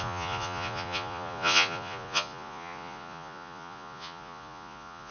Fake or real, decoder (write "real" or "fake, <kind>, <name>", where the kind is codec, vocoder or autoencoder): fake, vocoder, Vocos